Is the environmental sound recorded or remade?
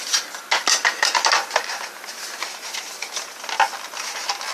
recorded